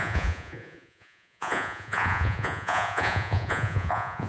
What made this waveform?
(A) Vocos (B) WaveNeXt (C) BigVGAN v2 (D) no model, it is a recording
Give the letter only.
A